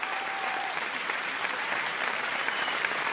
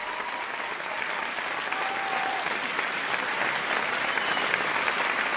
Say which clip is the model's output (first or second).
first